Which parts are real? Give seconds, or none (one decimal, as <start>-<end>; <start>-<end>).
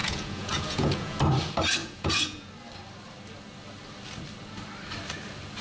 1.2-1.8; 2.5-5.6